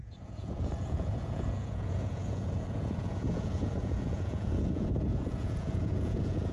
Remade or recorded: remade